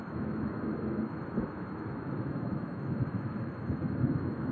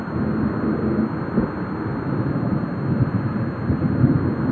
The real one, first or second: second